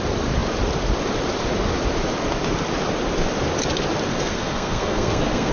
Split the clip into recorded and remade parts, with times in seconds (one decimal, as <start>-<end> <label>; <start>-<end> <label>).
0.0-4.1 recorded; 4.1-5.5 remade